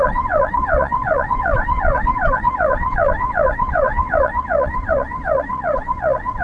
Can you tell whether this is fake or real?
fake